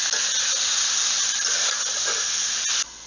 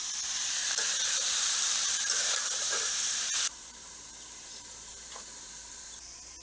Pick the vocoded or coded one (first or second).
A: second